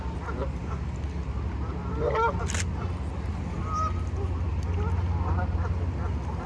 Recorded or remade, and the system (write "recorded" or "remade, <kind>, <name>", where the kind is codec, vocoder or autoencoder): recorded